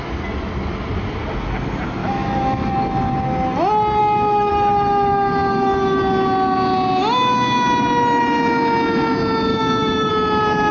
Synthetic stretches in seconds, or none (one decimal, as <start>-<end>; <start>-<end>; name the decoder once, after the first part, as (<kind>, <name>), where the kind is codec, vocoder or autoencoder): 2.0-2.7 (autoencoder, DAC-VAE); 4.0-4.5; 9.5-10.1